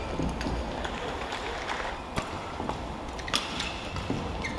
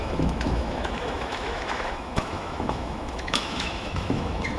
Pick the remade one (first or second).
second